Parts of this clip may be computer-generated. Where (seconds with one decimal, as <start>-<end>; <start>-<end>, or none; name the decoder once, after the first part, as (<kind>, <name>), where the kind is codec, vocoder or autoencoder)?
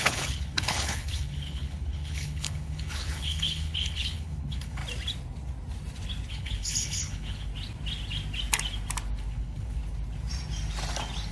0.0-4.8 (codec, HILCodec); 6.3-7.5; 9.3-9.8